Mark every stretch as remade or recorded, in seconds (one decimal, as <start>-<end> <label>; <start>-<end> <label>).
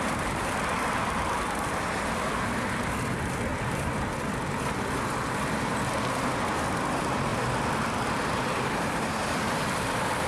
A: 0.0-7.3 recorded; 7.3-10.3 remade